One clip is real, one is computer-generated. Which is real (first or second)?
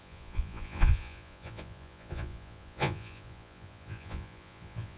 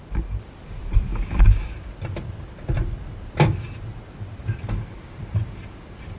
second